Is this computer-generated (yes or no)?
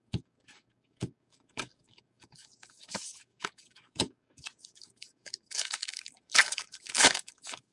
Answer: yes